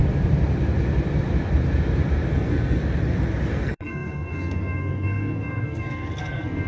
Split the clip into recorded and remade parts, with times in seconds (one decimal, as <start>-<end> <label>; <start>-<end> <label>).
0.0-2.3 recorded; 2.3-2.8 remade; 2.8-3.5 recorded; 3.5-6.7 remade